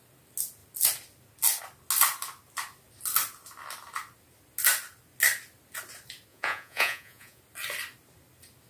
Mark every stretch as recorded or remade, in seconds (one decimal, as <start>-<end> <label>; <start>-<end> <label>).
0.0-6.3 recorded; 6.3-7.4 remade; 7.4-8.7 recorded